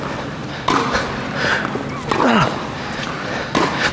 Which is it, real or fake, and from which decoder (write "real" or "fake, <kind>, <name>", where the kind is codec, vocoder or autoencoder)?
real